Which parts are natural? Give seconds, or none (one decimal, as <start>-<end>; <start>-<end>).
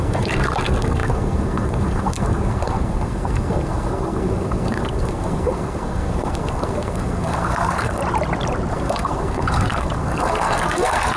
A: 8.0-8.7